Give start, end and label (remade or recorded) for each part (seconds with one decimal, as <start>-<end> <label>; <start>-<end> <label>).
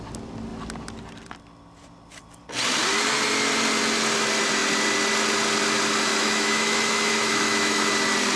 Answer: 0.0-6.1 recorded; 6.1-7.9 remade; 7.9-8.4 recorded